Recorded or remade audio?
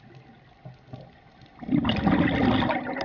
recorded